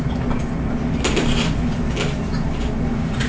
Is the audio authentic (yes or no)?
yes